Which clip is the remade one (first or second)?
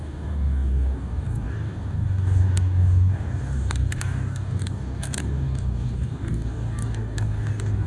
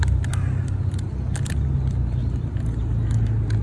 first